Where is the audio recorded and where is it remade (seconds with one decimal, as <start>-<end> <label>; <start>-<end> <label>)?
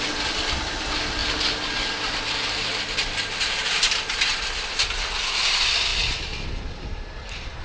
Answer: 0.0-7.6 recorded